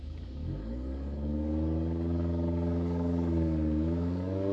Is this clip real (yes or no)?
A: no